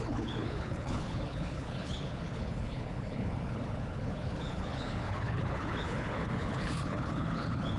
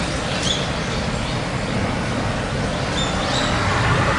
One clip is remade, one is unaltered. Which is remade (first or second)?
first